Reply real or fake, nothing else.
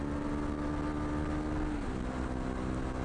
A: real